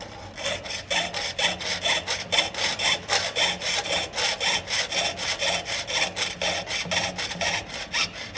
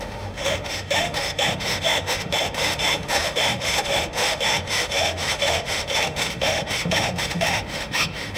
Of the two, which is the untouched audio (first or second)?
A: first